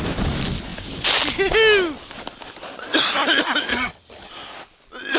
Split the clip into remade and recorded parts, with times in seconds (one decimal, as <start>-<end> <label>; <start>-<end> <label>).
0.0-3.7 recorded; 3.7-4.3 remade; 4.3-5.2 recorded